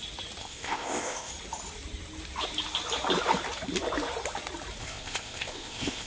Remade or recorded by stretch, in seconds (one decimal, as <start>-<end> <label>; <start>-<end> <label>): 0.0-0.4 recorded; 0.4-1.3 remade; 1.3-4.8 recorded; 4.8-6.1 remade